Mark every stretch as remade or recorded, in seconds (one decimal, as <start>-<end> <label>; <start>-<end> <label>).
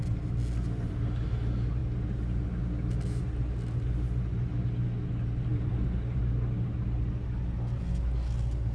0.0-5.5 recorded; 5.5-6.2 remade; 6.2-8.7 recorded